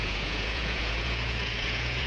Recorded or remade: remade